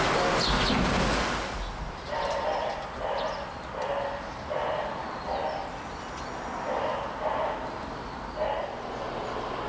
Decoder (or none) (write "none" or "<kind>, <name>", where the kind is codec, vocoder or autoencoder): none